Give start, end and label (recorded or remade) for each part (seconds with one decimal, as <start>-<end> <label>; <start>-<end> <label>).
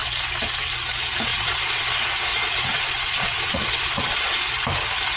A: 0.0-1.3 recorded; 1.3-1.9 remade; 1.9-2.3 recorded; 2.3-4.4 remade; 4.4-5.2 recorded